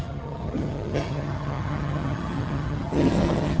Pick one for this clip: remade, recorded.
remade